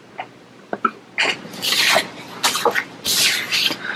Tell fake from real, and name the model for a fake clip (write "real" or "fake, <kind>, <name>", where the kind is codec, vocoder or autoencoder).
real